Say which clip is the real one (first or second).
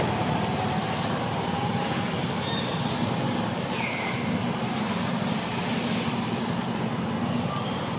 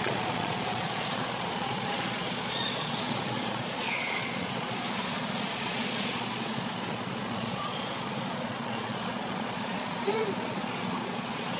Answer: first